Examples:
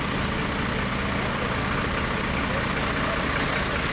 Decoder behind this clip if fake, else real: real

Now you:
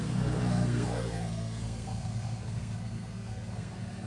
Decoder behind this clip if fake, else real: fake, codec, SNAC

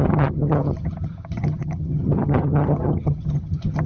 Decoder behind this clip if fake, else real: fake, vocoder, HiFi-GAN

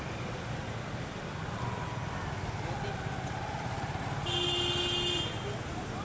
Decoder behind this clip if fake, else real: real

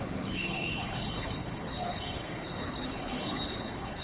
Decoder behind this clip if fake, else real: fake, codec, HILCodec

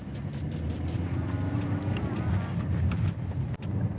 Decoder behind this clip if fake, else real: real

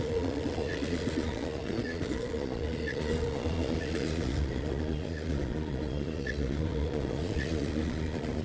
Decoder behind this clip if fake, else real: fake, vocoder, Vocos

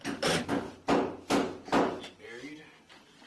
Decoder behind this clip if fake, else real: real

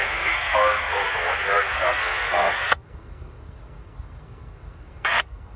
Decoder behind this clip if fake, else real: fake, codec, SNAC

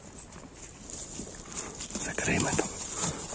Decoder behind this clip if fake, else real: real